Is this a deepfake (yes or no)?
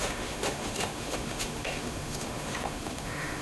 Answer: yes